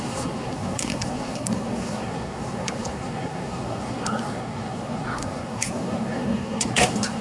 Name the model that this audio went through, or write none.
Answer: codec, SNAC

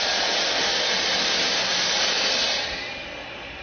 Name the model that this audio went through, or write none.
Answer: none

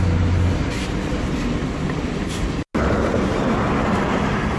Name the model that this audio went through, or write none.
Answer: none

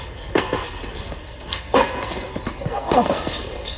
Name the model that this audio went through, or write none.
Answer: codec, SNAC